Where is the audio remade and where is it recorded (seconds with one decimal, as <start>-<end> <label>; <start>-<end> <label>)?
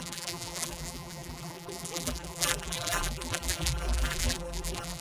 0.0-5.0 remade